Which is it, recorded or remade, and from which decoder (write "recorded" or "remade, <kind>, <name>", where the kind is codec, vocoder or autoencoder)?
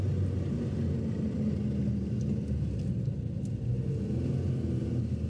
recorded